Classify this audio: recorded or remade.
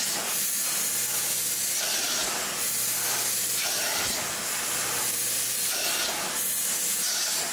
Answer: recorded